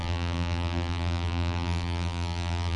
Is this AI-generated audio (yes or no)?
yes